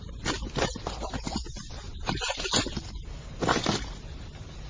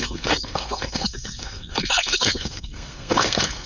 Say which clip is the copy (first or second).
second